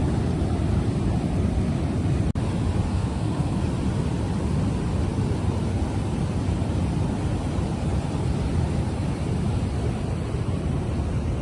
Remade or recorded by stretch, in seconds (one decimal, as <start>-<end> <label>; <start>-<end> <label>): 0.0-2.9 recorded; 2.9-3.6 remade; 3.6-11.4 recorded